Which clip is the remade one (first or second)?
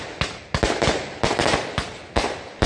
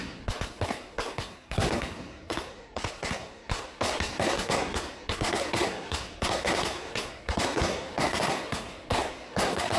second